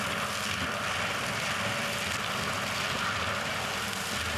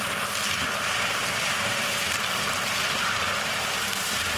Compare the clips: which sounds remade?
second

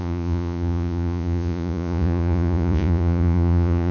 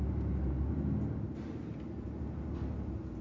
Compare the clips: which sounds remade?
first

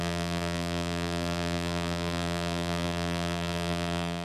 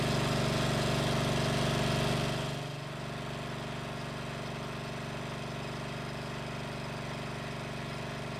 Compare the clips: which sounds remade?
first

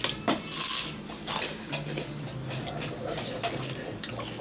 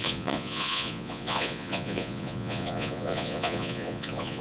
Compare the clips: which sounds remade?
second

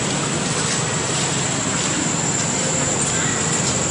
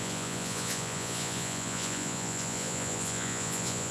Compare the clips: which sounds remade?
second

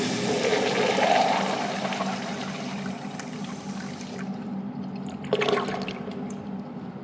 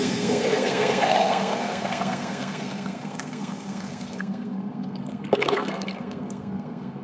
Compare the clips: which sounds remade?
second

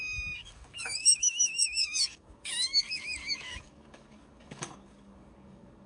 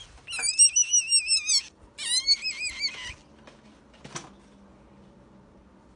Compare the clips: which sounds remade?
first